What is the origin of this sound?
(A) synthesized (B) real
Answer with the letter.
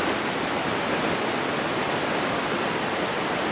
B